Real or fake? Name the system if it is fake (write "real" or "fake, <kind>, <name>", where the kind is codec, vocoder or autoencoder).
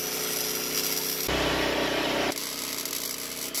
real